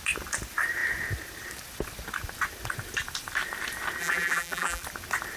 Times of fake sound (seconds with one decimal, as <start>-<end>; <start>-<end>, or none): 4.0-4.8